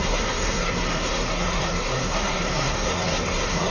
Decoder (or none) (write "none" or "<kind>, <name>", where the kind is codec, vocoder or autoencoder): codec, SNAC